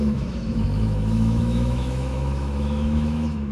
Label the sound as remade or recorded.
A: remade